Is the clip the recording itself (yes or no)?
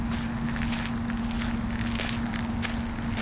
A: yes